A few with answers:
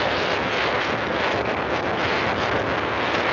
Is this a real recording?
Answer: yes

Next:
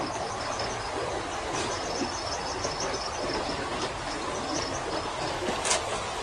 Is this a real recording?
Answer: yes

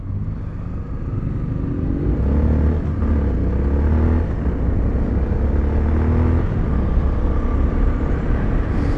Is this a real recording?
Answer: yes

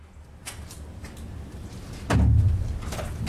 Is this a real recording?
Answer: yes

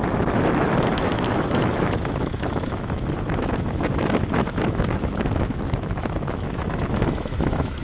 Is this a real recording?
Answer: no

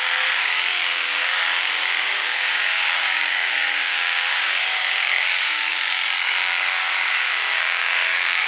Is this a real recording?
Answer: no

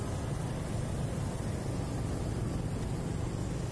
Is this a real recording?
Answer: yes